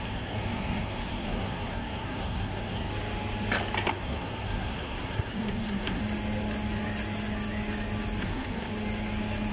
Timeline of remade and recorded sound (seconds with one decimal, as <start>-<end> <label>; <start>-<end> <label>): 0.0-2.9 remade; 2.9-3.9 recorded; 3.9-6.0 remade; 6.0-8.2 recorded; 8.2-8.7 remade; 8.7-9.5 recorded